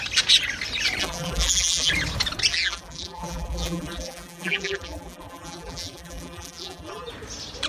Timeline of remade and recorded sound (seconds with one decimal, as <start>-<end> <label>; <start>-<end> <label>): 0.0-1.0 recorded; 1.0-1.9 remade; 1.9-2.5 recorded; 2.5-7.1 remade; 7.1-7.7 recorded